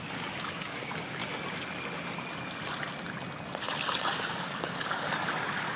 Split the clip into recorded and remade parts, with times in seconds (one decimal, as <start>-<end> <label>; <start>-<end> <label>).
0.0-1.2 remade; 1.2-3.8 recorded; 3.8-5.8 remade